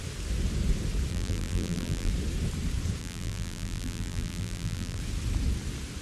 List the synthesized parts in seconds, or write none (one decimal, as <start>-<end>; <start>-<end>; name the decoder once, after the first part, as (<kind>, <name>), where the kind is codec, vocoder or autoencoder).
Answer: 1.1-2.1 (vocoder, BigVGAN v2); 3.0-5.0

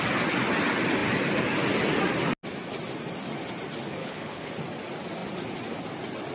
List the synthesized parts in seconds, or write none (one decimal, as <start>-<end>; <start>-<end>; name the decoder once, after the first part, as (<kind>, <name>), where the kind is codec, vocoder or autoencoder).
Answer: 4.0-4.5 (codec, HILCodec)

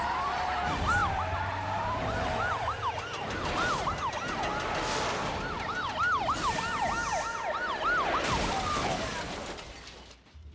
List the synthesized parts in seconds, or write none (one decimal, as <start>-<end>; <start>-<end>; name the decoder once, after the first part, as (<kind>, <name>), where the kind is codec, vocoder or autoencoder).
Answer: none

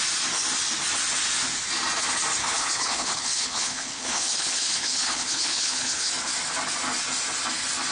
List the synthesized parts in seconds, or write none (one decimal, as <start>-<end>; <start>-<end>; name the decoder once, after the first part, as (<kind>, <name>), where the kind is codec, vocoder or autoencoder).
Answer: 2.4-6.1 (codec, HILCodec)